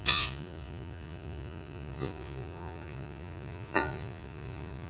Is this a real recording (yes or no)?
no